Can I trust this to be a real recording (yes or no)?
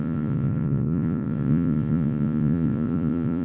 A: no